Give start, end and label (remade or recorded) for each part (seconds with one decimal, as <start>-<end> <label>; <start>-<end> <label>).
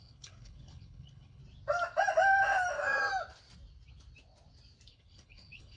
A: 0.0-1.4 remade; 1.4-4.9 recorded; 4.9-5.8 remade